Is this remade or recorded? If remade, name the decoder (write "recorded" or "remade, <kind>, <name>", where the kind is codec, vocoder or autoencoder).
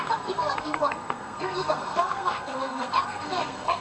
remade, codec, SNAC